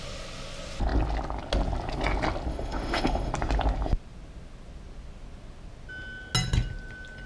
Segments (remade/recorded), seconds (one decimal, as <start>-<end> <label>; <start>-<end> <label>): 0.0-2.5 recorded; 2.5-3.3 remade; 3.3-7.3 recorded